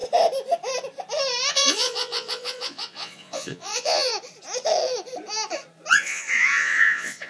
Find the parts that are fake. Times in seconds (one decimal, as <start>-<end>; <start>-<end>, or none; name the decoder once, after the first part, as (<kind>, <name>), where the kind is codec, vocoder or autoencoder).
1.5-4.1 (vocoder, Vocos); 5.9-7.3